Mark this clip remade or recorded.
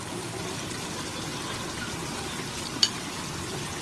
recorded